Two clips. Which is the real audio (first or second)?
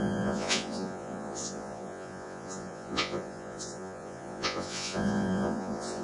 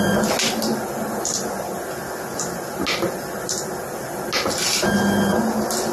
second